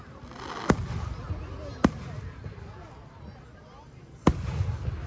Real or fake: real